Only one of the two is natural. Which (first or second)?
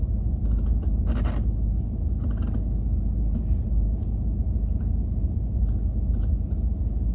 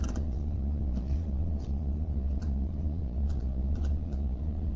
first